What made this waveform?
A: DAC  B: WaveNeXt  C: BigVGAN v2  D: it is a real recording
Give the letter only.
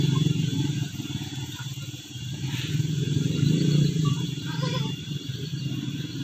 C